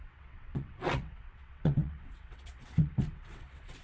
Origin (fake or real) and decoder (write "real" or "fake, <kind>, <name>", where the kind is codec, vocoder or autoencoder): fake, vocoder, WaveNeXt